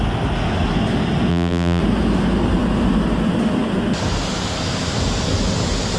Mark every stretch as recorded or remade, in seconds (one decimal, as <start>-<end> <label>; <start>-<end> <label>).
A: 0.0-1.3 recorded; 1.3-1.8 remade; 1.8-6.0 recorded